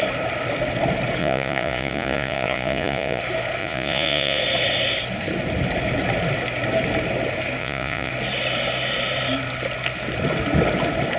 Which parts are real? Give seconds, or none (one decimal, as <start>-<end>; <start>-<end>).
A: 0.0-1.2; 3.2-3.6; 4.4-7.6; 8.1-11.2